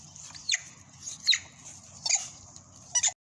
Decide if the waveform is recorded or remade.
recorded